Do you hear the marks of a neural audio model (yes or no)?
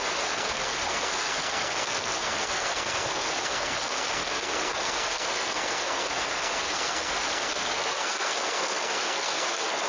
yes